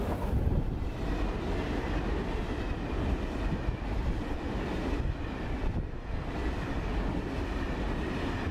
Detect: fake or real real